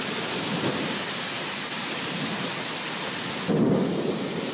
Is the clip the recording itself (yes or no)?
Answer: yes